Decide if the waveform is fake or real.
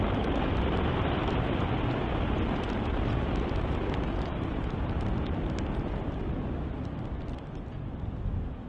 real